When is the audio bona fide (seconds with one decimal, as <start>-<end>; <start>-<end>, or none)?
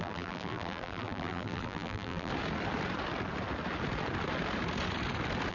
2.3-5.5